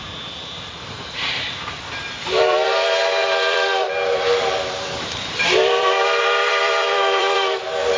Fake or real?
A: fake